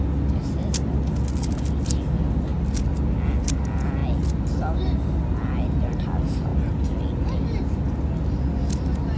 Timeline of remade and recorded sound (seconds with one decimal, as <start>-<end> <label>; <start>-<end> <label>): 0.0-9.2 recorded

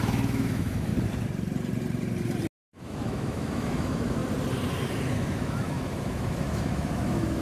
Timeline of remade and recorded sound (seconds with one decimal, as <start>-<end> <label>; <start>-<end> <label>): 0.0-0.9 remade; 0.9-2.6 recorded; 2.6-4.2 remade; 4.2-5.1 recorded; 5.1-7.4 remade

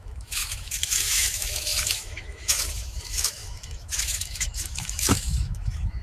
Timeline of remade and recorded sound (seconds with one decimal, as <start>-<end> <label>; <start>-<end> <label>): 0.0-6.0 remade

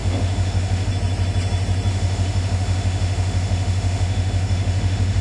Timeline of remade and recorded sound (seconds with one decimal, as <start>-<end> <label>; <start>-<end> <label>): 0.0-0.9 remade; 0.9-1.9 recorded; 1.9-5.2 remade